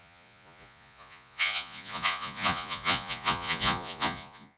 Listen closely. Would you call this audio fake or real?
fake